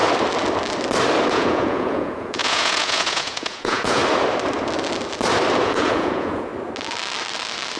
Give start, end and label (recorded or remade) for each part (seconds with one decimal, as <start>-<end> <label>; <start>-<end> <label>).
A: 0.0-1.3 recorded; 1.3-4.0 remade; 4.0-5.6 recorded; 5.6-6.5 remade; 6.5-7.8 recorded